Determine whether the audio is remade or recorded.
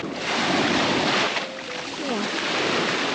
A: recorded